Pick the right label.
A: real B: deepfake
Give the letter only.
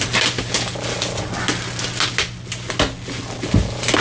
A